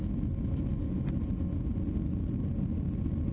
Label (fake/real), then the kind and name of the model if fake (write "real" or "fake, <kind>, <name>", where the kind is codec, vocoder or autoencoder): real